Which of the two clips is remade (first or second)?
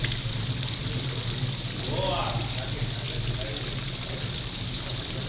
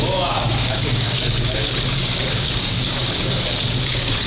second